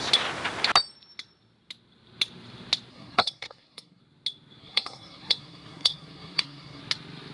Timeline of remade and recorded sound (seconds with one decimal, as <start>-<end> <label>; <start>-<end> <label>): 0.0-2.9 recorded; 2.9-4.0 remade; 4.0-4.6 recorded; 4.6-6.8 remade; 6.8-7.3 recorded